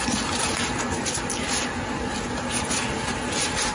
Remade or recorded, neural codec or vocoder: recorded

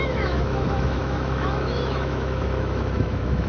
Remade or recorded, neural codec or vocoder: remade, autoencoder, DAC-VAE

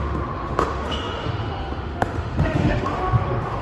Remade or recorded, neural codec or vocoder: remade, autoencoder, DAC-VAE